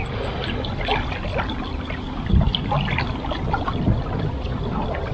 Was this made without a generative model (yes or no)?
yes